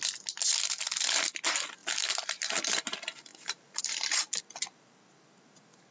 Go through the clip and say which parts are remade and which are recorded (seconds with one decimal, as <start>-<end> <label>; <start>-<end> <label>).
0.0-3.3 recorded; 3.3-3.8 remade; 3.8-5.9 recorded